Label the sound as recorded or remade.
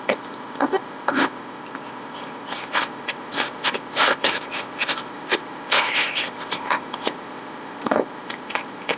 remade